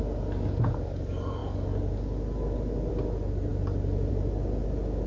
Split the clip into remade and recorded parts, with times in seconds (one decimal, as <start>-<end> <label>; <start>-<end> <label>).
0.0-5.1 recorded